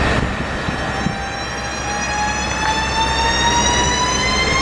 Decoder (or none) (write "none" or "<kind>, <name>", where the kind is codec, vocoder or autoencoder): none